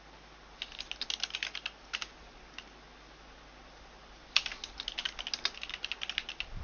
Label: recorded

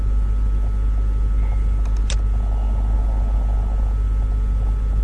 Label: recorded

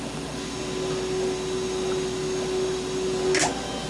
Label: recorded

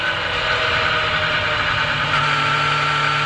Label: recorded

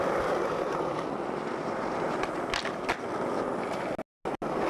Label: recorded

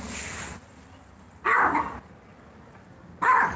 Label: recorded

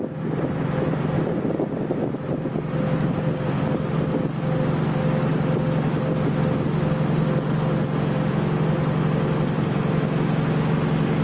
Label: recorded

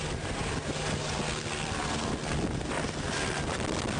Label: remade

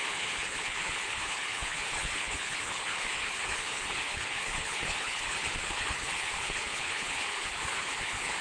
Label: remade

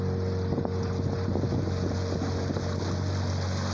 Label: recorded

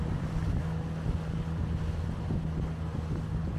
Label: recorded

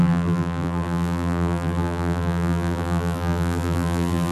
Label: remade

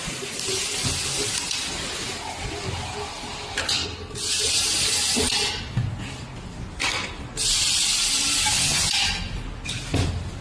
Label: recorded